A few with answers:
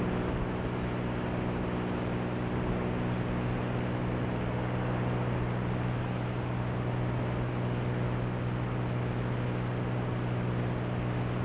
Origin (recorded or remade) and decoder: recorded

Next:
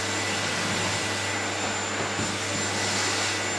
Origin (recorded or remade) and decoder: recorded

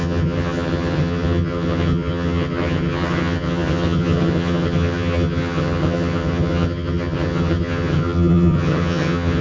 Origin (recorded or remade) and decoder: remade, vocoder, HiFi-GAN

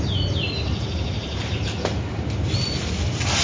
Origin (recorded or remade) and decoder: recorded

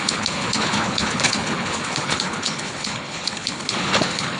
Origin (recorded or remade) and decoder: remade, codec, HILCodec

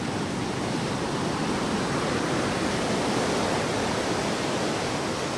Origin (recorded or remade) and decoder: recorded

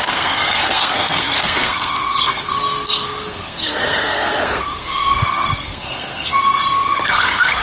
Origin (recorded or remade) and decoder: remade, codec, SNAC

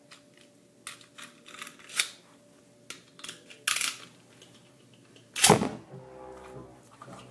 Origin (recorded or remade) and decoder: recorded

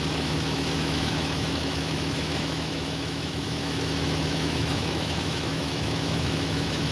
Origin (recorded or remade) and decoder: remade, autoencoder, DAC-VAE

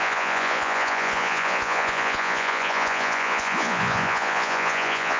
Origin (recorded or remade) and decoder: remade, vocoder, Vocos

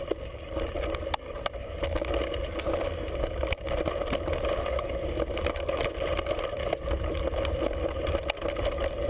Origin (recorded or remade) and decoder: recorded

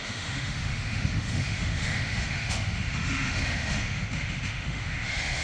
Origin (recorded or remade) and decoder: remade, autoencoder, DAC-VAE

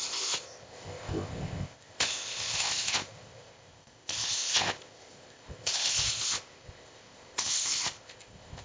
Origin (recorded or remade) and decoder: remade, codec, ZipCodec